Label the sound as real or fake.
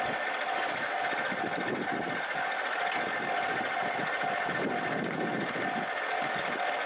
real